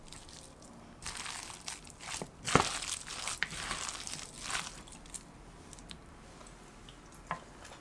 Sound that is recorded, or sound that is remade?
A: recorded